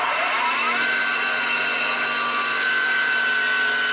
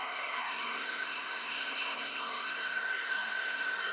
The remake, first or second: second